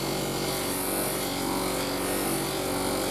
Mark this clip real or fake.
real